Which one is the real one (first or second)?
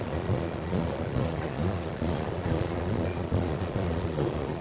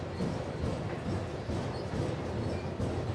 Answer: second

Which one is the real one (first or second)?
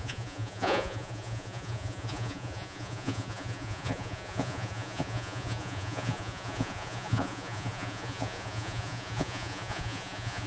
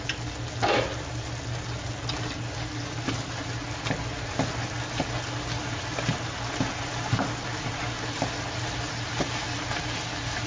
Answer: second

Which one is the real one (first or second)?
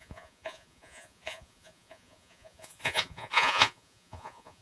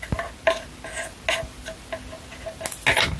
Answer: second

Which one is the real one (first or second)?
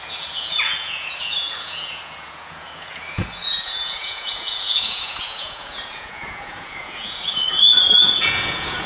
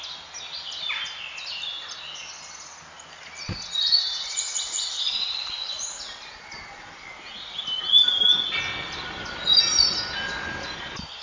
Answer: second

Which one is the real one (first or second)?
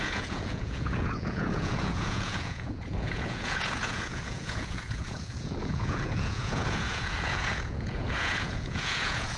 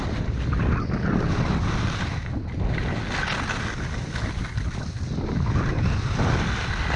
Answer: second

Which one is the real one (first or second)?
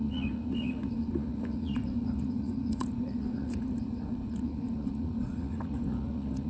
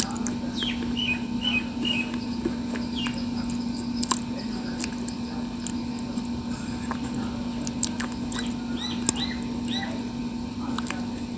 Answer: second